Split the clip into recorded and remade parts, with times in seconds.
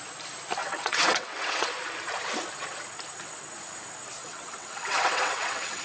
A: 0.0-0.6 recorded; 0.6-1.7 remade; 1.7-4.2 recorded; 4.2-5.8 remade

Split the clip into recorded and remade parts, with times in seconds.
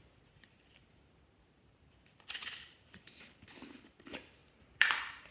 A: 0.0-0.8 recorded; 0.8-3.1 remade; 3.1-4.4 recorded; 4.4-5.3 remade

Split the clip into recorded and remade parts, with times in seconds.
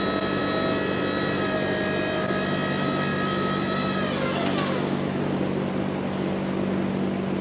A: 0.0-7.4 recorded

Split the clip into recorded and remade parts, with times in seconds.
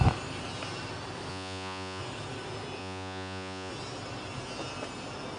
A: 0.0-1.3 recorded; 1.3-2.0 remade; 2.0-2.8 recorded; 2.8-3.7 remade; 3.7-5.4 recorded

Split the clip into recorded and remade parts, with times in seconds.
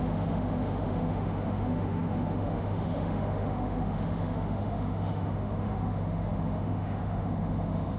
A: 0.0-8.0 remade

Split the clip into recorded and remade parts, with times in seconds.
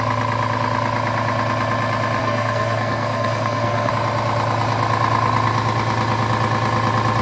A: 0.0-2.2 recorded; 2.2-3.9 remade; 3.9-7.2 recorded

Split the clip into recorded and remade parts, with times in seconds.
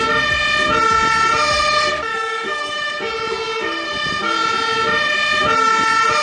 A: 0.0-2.1 recorded; 2.1-2.9 remade; 2.9-6.2 recorded